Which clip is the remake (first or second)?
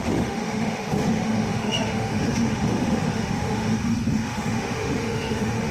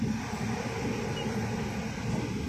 first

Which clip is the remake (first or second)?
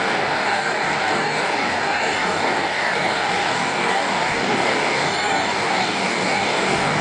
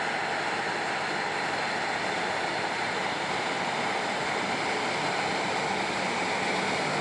first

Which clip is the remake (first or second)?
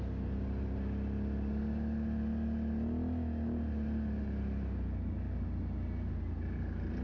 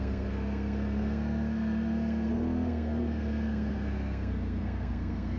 second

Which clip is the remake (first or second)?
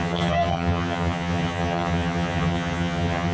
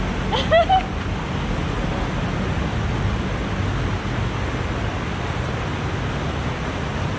first